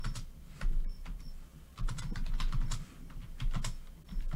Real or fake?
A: real